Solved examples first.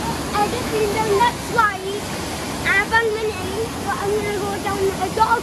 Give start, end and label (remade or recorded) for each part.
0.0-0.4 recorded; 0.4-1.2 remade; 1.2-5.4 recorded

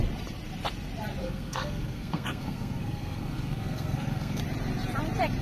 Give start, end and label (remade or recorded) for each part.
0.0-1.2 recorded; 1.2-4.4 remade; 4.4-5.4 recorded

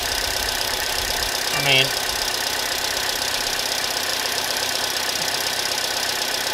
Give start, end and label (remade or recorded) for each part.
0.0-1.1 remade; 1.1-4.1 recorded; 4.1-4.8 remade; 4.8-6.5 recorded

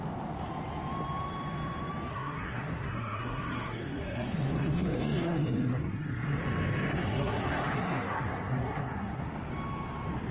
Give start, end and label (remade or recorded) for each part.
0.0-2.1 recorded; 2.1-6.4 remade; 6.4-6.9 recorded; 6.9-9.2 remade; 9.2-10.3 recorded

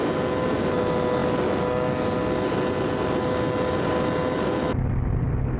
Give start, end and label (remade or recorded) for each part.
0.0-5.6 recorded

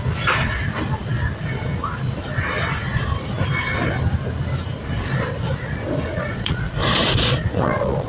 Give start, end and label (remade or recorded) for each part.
0.0-6.1 recorded; 6.1-6.6 remade; 6.6-7.0 recorded; 7.0-8.1 remade

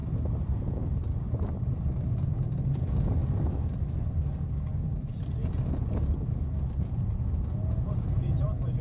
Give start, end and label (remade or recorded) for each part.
0.0-0.6 recorded; 0.6-1.0 remade; 1.0-2.1 recorded; 2.1-3.2 remade; 3.2-6.8 recorded; 6.8-8.8 remade

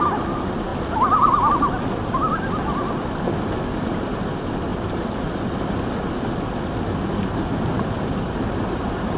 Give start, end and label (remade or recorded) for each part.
0.0-9.2 recorded